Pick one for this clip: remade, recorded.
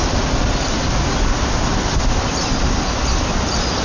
recorded